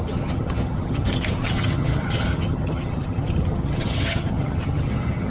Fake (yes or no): yes